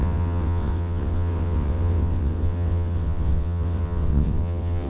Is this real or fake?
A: fake